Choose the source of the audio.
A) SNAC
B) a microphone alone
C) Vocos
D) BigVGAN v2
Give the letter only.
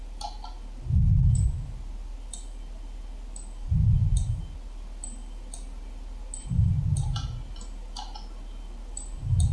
B